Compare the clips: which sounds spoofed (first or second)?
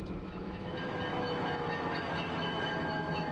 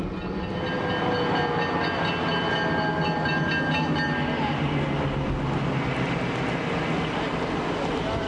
first